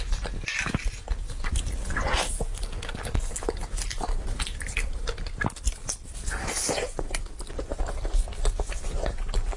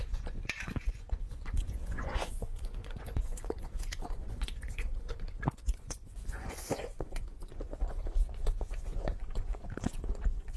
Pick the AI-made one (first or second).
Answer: second